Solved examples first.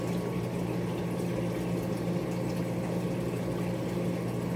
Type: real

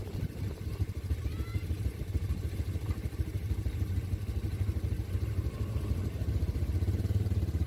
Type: fake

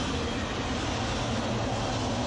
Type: real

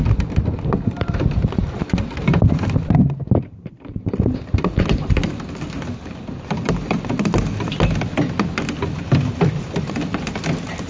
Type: real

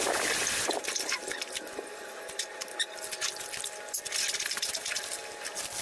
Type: real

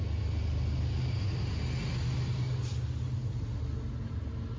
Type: real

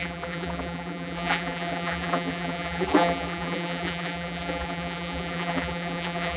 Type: fake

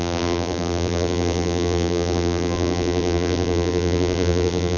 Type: fake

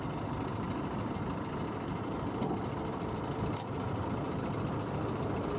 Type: real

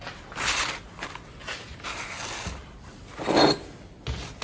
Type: real